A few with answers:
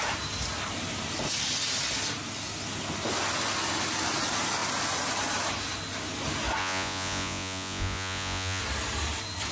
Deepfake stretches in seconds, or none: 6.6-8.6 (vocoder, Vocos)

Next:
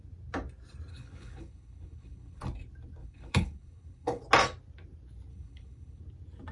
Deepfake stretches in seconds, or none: 0.9-2.4 (codec, HILCodec); 3.0-4.2; 5.3-6.0

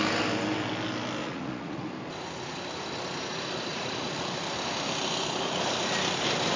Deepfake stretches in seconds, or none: 1.2-1.9 (vocoder, Vocos); 3.7-4.2

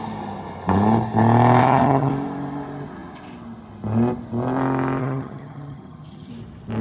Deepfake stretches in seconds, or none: 1.6-2.1 (vocoder, HiFi-GAN); 5.0-6.3

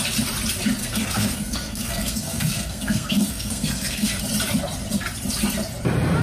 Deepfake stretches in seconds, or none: 0.8-4.2 (codec, SNAC)